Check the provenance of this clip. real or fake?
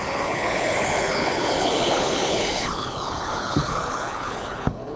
fake